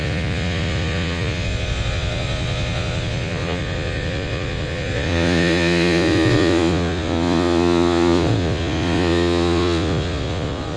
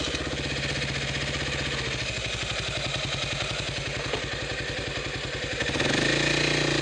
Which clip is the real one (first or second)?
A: second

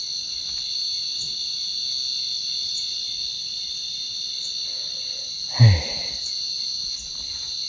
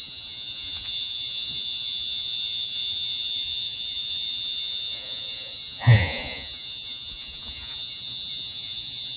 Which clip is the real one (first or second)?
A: first